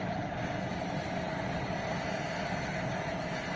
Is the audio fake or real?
real